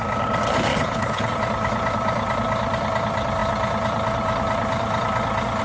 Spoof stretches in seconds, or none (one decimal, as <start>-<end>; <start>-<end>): 0.7-1.3